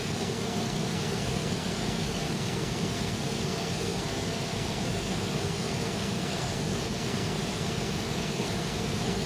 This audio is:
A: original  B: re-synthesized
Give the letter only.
B